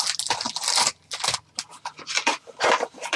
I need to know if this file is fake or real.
real